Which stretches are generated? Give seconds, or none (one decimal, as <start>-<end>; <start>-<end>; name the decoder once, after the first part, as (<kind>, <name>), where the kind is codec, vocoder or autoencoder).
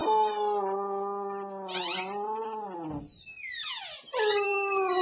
none